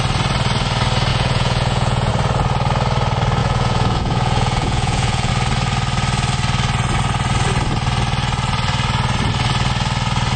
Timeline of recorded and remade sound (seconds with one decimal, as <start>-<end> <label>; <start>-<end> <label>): 0.0-1.1 recorded; 1.1-2.1 remade; 2.1-3.4 recorded; 3.4-5.3 remade; 5.3-10.4 recorded